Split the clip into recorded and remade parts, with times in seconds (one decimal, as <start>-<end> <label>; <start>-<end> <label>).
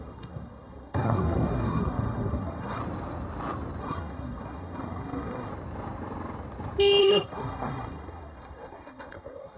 0.0-2.8 remade; 2.8-3.8 recorded; 3.8-5.5 remade; 5.5-7.0 recorded; 7.0-9.6 remade